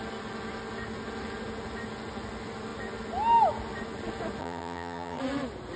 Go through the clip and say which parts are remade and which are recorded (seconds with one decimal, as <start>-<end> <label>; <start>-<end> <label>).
0.0-4.4 recorded; 4.4-5.2 remade; 5.2-5.8 recorded